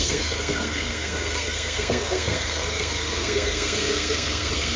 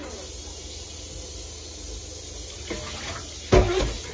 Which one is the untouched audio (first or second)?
second